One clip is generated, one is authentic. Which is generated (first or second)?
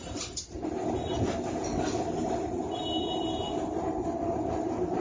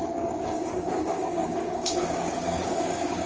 second